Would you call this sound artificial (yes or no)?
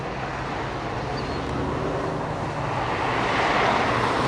no